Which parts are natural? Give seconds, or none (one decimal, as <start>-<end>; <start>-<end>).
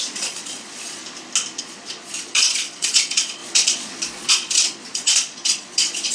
1.0-1.6